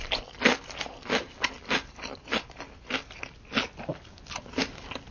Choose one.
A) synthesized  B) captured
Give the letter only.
B